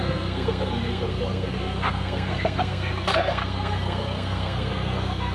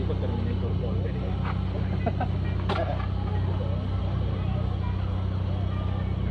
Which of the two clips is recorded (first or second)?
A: second